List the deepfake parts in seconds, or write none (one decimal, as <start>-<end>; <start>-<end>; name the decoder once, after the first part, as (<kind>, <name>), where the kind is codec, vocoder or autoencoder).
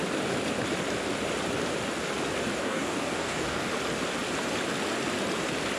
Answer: 2.6-3.7 (codec, DAC)